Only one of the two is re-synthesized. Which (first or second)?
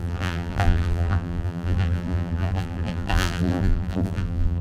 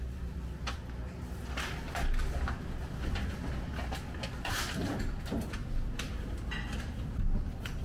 first